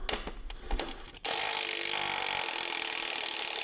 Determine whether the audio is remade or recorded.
recorded